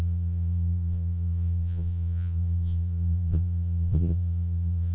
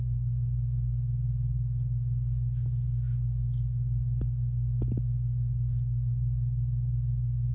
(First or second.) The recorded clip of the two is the second